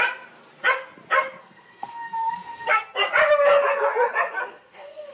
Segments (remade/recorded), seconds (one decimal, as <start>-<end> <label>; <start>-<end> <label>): 0.0-1.4 recorded; 1.4-3.0 remade; 3.0-4.4 recorded; 4.4-5.1 remade